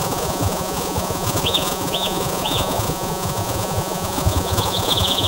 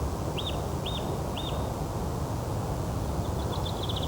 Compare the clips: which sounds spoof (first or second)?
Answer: first